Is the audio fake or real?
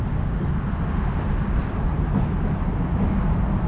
real